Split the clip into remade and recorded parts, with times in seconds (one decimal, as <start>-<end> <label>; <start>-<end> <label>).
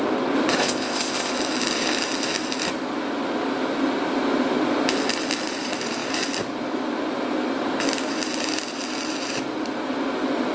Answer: 0.0-0.6 recorded; 0.6-1.3 remade; 1.3-10.5 recorded